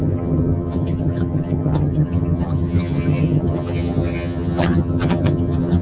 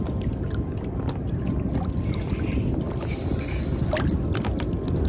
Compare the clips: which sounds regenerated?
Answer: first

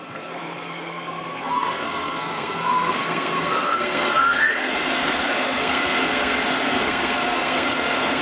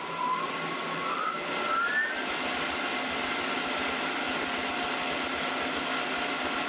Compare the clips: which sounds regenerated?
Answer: first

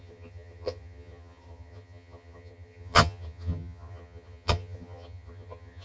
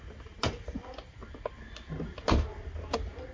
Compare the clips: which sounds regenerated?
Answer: first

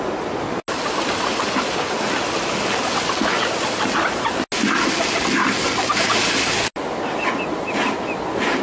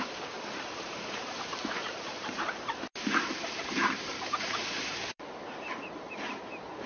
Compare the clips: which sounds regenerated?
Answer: second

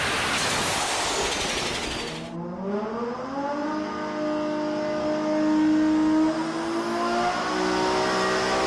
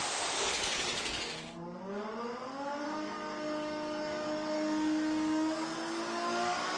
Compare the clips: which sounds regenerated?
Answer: second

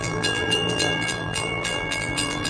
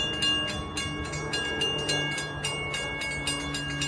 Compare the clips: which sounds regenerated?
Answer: first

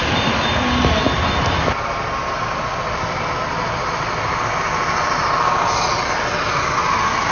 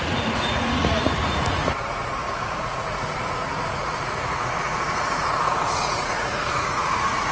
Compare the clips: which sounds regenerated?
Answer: second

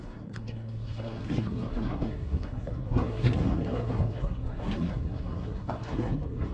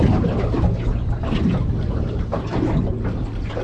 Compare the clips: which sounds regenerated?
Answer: first